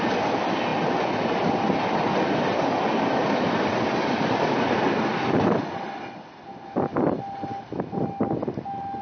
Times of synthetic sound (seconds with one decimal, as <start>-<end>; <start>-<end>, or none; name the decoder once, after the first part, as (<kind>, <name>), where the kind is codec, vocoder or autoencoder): none